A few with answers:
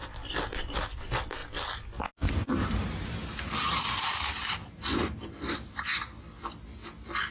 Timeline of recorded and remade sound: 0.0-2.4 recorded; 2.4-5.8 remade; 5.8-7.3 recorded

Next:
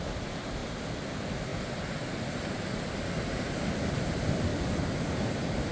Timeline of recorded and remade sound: 0.0-5.7 recorded

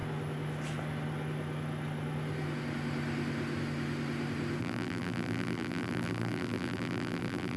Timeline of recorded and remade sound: 0.0-4.6 recorded; 4.6-7.6 remade